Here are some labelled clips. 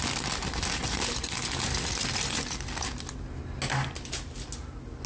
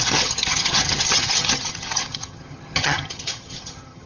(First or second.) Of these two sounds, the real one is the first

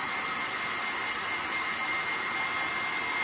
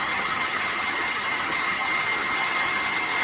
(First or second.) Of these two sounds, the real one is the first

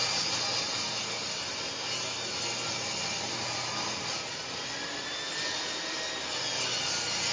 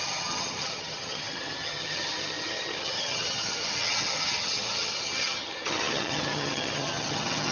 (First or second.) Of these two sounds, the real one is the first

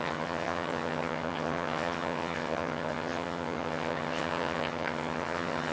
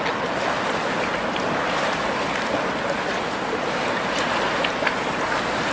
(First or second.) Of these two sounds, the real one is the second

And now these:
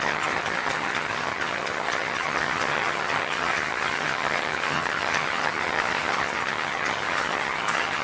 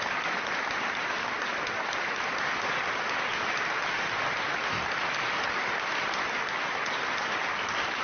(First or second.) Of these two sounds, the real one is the second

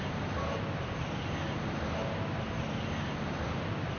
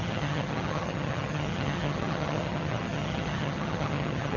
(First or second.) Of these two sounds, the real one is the first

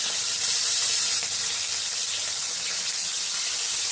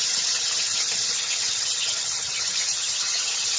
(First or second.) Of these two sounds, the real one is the first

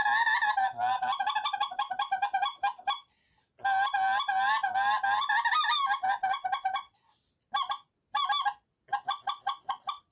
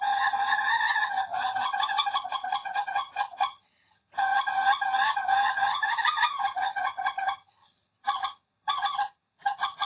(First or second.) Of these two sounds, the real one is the first